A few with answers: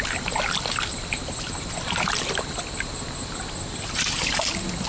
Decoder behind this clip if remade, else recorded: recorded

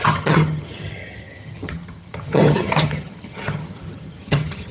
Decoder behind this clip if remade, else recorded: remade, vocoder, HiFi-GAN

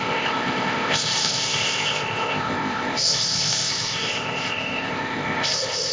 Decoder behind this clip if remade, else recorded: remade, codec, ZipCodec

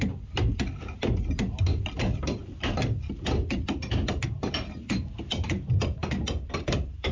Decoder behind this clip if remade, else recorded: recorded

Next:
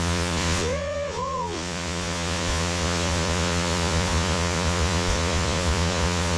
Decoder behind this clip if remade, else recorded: remade, vocoder, Vocos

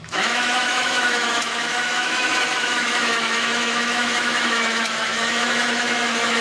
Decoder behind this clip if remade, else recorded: remade, autoencoder, DAC-VAE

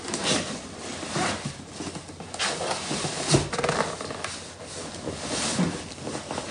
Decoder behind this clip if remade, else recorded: recorded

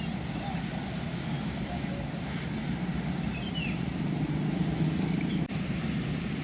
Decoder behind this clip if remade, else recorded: recorded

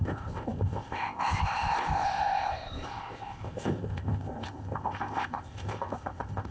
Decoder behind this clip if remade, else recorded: remade, codec, ZipCodec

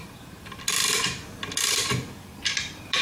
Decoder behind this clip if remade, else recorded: remade, vocoder, BigVGAN v2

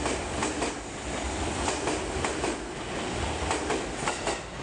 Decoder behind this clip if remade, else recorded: recorded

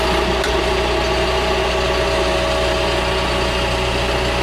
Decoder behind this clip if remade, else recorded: recorded